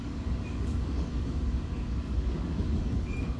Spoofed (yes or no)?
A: yes